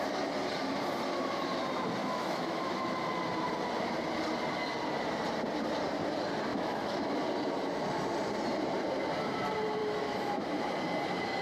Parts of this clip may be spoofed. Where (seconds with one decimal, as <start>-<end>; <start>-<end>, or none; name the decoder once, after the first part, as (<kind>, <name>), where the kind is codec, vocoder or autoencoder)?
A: 2.0-2.6 (autoencoder, DAC-VAE); 6.5-7.2; 9.8-10.6